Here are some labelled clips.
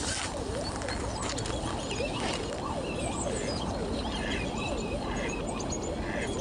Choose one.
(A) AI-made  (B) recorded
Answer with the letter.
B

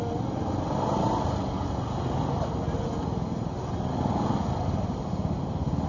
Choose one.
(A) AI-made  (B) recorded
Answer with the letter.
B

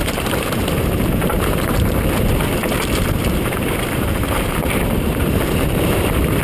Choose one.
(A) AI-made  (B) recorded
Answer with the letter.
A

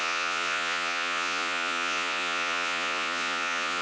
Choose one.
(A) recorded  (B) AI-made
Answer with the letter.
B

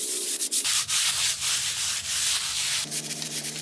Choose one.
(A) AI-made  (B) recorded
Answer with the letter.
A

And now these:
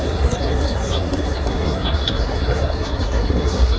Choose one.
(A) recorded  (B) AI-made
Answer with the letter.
B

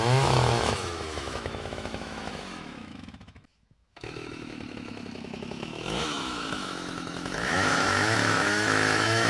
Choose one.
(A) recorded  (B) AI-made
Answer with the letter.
B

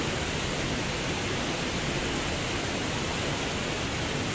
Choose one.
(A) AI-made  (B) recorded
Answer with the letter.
B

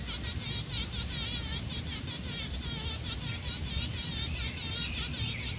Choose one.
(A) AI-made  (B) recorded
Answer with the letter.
B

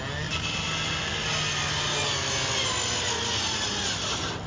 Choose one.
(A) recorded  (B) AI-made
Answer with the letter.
A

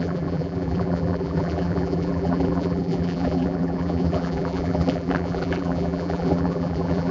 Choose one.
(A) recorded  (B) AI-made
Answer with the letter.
B